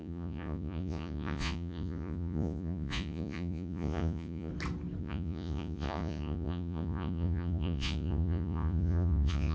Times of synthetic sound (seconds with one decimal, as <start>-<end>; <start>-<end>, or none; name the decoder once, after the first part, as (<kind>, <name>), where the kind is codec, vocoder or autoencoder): 0.0-4.5 (vocoder, Vocos); 5.0-9.5